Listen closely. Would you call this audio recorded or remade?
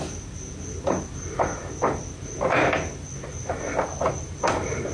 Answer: recorded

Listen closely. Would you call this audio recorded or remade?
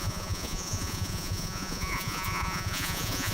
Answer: remade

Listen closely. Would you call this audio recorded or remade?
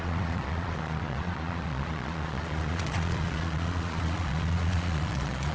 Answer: remade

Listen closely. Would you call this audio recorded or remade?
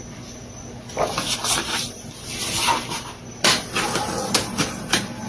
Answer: recorded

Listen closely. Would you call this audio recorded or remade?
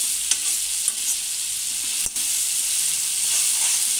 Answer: recorded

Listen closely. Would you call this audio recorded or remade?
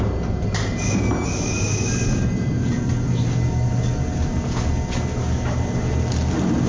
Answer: recorded